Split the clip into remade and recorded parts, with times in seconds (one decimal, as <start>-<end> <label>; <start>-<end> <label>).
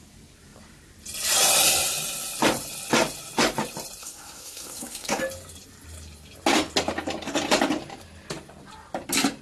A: 0.0-4.0 recorded; 4.0-5.2 remade; 5.2-9.4 recorded